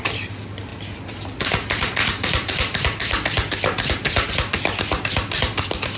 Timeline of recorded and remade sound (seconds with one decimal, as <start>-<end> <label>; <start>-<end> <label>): 0.0-6.0 recorded